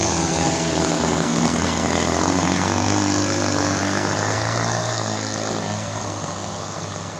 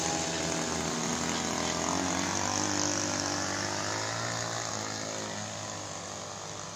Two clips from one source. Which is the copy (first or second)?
first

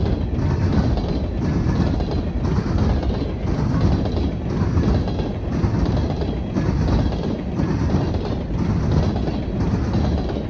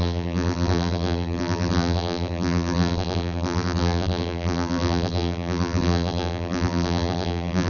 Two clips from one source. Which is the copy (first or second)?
second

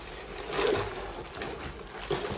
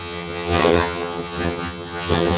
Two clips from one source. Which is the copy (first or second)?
second